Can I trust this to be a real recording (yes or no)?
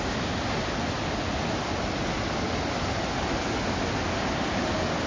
yes